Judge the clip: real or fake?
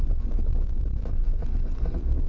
real